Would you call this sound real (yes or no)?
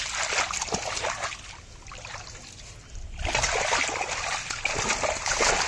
yes